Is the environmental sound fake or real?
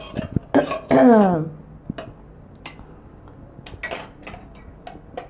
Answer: real